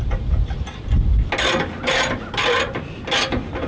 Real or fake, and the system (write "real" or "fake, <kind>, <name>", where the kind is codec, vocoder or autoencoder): real